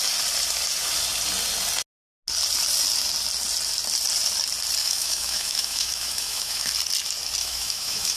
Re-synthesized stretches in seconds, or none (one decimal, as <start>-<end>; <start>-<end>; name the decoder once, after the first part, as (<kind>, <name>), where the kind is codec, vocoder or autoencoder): 4.8-6.7 (autoencoder, DAC-VAE); 7.4-8.2